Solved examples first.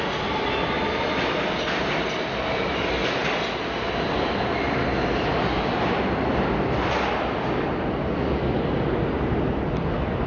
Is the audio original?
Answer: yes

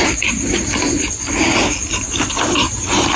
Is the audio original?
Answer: yes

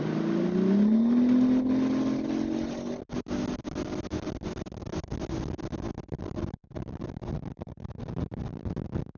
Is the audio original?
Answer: yes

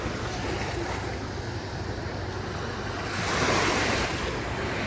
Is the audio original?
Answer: yes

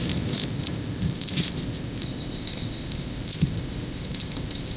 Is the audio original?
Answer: no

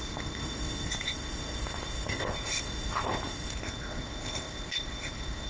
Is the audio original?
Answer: no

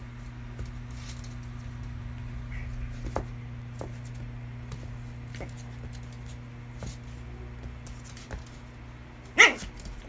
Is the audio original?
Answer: yes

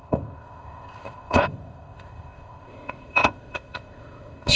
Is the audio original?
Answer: no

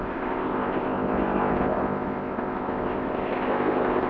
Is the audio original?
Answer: no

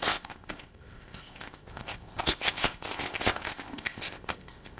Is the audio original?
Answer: no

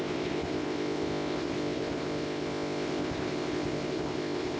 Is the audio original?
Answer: no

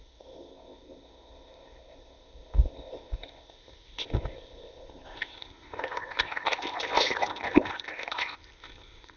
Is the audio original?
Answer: no